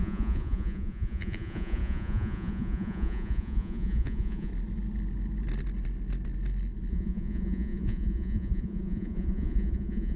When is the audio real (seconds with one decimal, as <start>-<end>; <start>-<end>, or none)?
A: 4.5-6.9